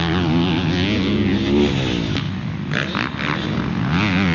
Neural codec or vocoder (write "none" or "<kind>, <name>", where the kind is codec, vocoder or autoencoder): none